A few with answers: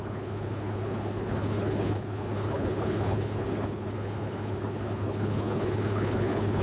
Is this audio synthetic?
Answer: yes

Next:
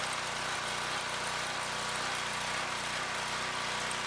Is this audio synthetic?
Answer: no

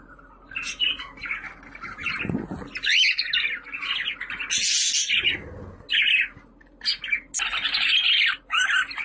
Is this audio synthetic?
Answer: no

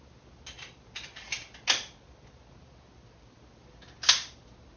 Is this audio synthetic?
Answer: no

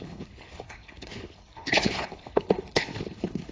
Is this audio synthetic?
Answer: yes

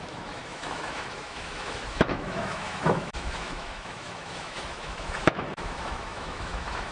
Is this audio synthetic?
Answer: yes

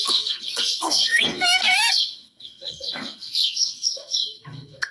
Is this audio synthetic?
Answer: yes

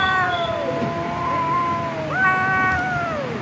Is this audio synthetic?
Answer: no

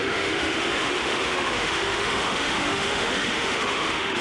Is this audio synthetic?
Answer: yes